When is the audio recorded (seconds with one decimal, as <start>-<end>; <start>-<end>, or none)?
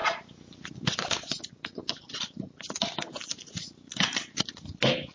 0.0-5.1